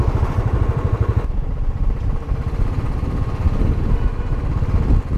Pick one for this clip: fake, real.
fake